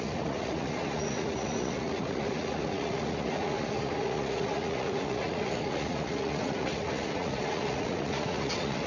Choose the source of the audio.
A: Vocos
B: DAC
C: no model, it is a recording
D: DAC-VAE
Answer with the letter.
A